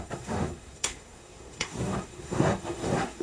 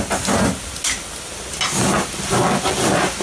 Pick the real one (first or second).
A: second